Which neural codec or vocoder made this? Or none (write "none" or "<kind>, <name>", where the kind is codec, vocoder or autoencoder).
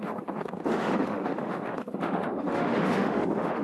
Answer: autoencoder, DAC-VAE